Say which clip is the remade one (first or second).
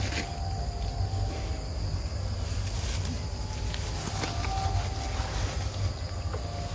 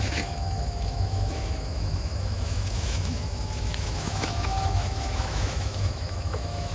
second